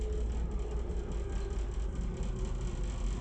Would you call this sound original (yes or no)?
yes